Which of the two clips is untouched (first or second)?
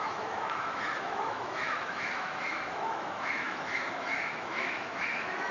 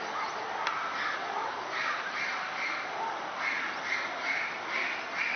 second